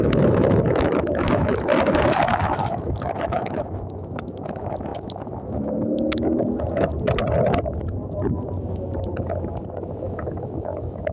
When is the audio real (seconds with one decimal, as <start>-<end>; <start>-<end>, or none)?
6.9-10.0